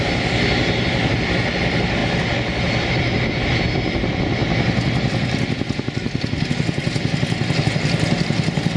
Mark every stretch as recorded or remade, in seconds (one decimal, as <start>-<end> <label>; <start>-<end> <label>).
0.0-8.8 recorded